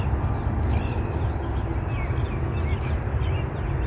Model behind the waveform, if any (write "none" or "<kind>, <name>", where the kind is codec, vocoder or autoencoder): none